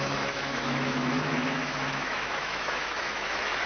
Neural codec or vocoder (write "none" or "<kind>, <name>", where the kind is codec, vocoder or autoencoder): autoencoder, DAC-VAE